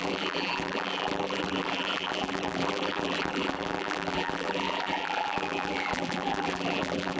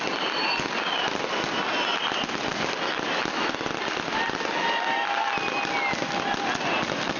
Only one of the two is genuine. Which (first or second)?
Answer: second